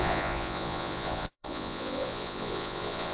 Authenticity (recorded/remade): remade